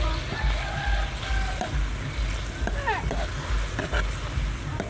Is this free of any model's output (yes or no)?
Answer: yes